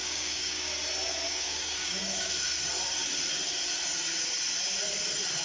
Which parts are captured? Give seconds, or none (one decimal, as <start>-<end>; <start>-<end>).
0.7-1.3; 2.3-5.4